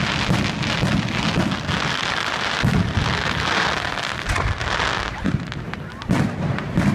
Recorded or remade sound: recorded